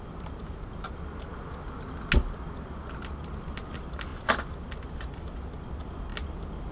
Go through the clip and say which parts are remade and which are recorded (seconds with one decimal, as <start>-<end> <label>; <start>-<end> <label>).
0.0-6.7 recorded